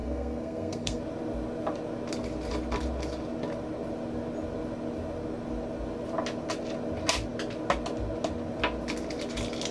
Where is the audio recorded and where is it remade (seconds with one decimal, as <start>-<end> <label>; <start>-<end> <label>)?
0.0-1.0 remade; 1.0-9.7 recorded